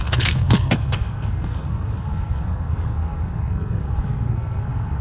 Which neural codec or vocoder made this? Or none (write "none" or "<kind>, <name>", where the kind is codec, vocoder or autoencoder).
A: codec, SNAC